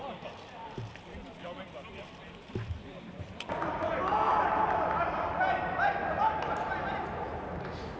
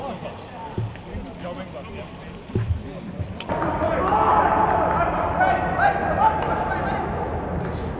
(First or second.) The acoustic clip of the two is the second